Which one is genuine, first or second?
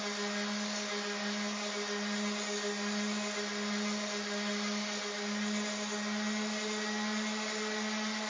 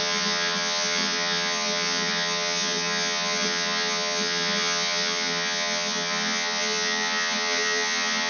first